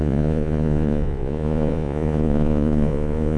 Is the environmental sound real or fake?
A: fake